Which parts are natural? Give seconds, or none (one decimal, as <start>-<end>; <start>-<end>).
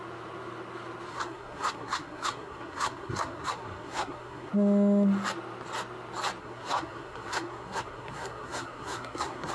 0.0-1.1; 4.5-6.4